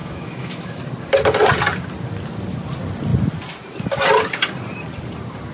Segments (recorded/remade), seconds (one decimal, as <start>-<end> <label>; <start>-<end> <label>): 0.0-0.8 remade; 0.8-5.5 recorded